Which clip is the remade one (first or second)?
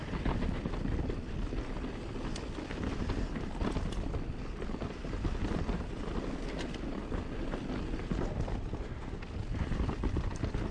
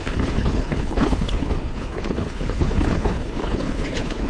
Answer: second